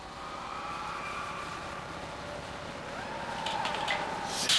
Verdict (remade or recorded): recorded